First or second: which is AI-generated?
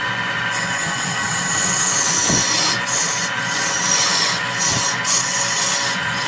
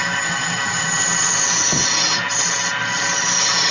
first